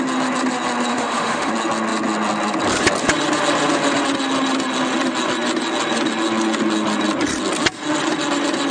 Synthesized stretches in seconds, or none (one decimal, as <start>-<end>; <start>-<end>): 0.9-1.5